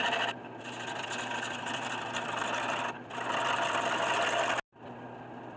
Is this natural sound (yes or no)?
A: yes